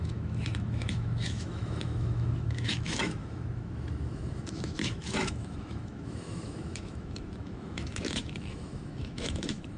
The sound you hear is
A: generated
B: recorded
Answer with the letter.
A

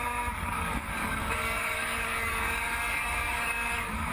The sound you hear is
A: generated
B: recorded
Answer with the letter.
A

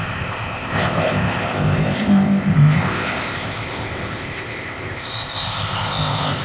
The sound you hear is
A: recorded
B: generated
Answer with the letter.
B